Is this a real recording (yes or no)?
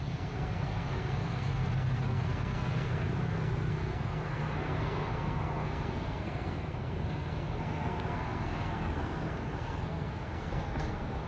no